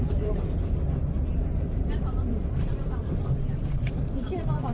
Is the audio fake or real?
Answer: fake